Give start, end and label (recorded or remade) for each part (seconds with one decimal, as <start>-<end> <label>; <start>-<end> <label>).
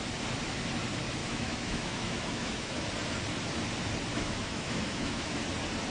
0.0-1.2 recorded; 1.2-2.8 remade; 2.8-4.1 recorded; 4.1-5.4 remade; 5.4-5.9 recorded